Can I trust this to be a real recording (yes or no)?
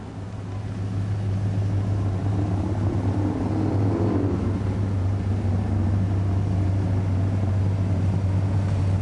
yes